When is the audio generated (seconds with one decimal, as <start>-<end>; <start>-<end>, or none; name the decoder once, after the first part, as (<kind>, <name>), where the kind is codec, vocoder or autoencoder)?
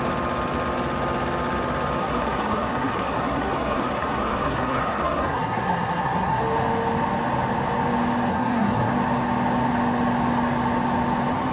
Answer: 2.0-6.4 (codec, SNAC); 8.3-8.9